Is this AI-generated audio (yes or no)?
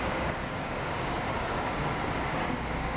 yes